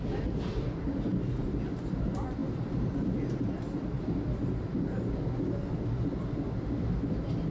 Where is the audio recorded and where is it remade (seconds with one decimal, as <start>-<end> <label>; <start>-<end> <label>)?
0.0-7.5 recorded